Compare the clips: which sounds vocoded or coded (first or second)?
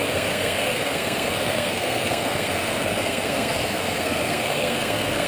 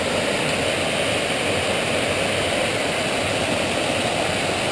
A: first